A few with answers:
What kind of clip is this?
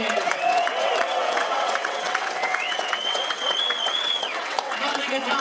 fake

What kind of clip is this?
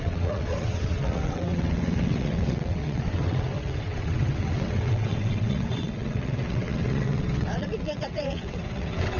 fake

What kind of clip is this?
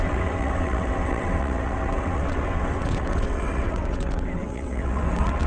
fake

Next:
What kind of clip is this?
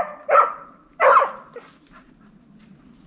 real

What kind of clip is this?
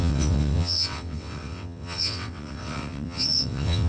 fake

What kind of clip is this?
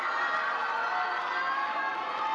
real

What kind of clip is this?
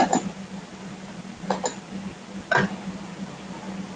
real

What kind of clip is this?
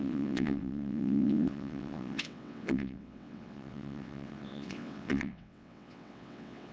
fake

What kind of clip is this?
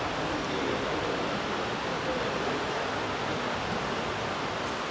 real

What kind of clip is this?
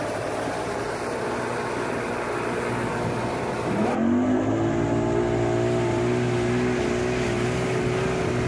real